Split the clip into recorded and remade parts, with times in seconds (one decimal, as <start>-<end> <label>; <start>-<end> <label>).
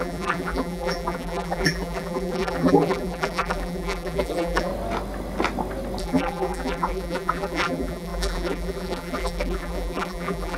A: 0.0-4.7 remade; 4.7-6.0 recorded; 6.0-10.6 remade